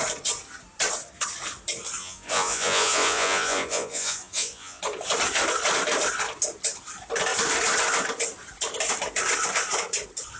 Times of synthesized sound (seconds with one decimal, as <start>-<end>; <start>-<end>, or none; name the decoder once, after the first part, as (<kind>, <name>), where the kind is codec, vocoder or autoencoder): 2.0-4.8 (vocoder, Vocos)